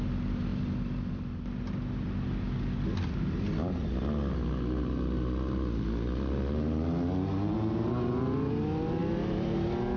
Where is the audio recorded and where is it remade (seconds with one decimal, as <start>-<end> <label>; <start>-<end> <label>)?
0.0-10.0 recorded